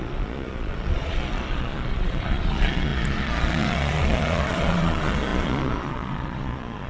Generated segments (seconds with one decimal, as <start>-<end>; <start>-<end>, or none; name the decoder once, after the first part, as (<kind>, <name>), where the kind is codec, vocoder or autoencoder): 0.0-6.9 (vocoder, Vocos)